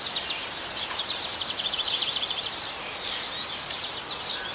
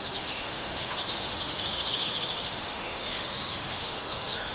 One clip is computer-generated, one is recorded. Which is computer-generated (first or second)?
second